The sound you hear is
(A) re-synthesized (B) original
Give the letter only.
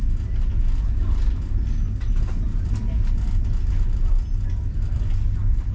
B